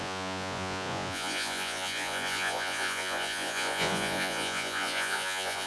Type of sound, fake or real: fake